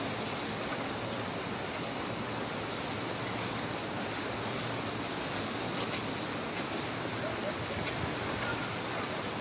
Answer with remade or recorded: recorded